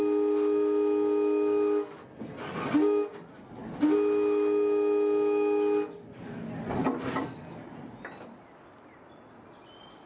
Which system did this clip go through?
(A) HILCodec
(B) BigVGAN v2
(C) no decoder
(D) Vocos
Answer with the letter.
C